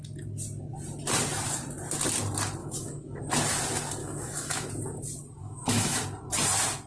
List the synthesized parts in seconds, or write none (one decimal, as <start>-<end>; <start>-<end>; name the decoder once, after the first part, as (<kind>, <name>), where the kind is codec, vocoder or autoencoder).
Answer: 2.6-3.2 (autoencoder, DAC-VAE); 4.0-4.7; 5.4-6.0